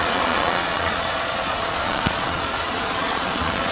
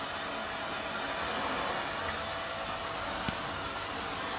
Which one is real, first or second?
second